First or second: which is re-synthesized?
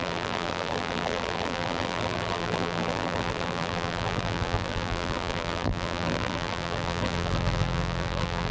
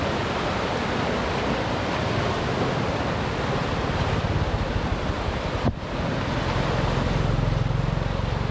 first